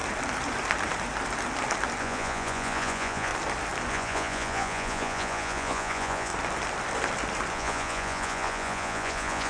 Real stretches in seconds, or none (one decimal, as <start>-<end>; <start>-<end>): 0.0-2.0; 3.3-3.9; 6.3-7.5